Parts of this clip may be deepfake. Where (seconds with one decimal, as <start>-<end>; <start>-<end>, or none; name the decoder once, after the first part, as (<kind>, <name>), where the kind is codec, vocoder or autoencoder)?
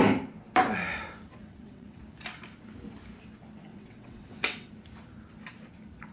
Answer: 1.4-2.0 (vocoder, WaveNeXt); 3.7-4.7